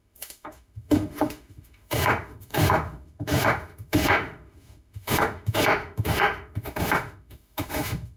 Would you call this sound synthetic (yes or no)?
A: yes